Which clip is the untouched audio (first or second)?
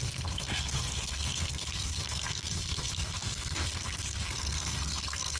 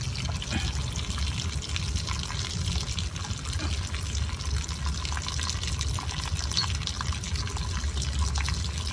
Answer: second